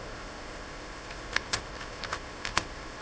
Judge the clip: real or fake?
fake